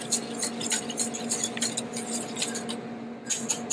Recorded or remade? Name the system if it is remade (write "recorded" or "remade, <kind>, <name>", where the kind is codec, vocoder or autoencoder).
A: recorded